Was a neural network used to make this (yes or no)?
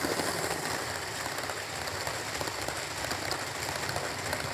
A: no